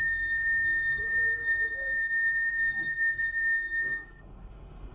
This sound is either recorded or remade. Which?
remade